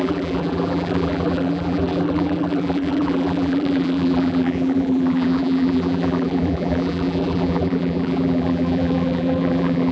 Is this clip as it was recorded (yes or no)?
no